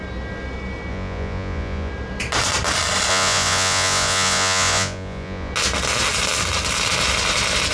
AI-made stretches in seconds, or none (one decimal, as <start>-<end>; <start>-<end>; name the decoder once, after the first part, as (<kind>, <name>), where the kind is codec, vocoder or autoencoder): 0.9-1.9 (vocoder, Vocos); 3.1-5.5